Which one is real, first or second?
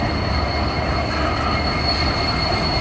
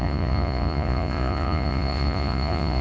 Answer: first